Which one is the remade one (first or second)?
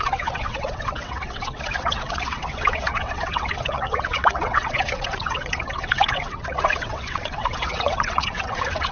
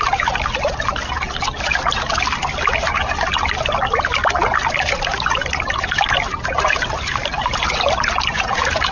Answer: first